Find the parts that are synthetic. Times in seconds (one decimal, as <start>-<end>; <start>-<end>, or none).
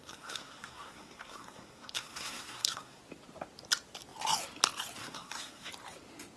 0.0-3.0; 5.0-5.7